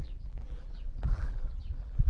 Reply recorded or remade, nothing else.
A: remade